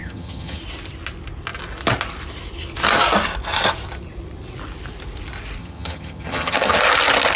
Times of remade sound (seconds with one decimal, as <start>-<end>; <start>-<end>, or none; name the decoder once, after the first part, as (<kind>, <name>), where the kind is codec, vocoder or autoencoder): 0.0-0.6 (vocoder, HiFi-GAN); 5.6-6.8